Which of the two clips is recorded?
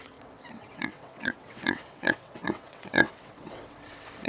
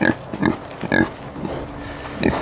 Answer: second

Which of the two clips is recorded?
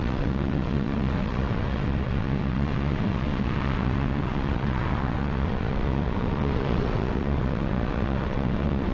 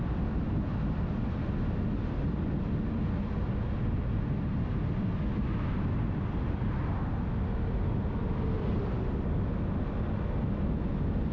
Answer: second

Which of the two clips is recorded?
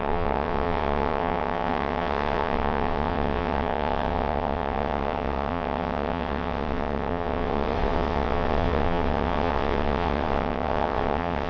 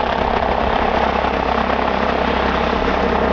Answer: second